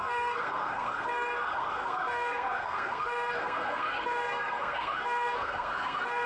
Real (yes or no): no